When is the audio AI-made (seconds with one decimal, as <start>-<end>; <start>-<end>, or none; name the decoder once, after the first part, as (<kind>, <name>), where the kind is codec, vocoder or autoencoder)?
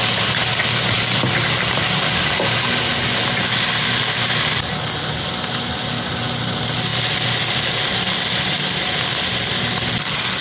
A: none